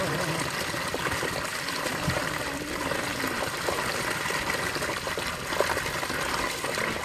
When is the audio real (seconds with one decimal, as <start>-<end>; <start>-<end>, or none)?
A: 0.0-7.0